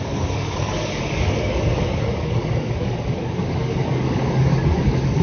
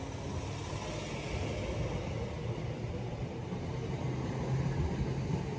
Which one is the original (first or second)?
second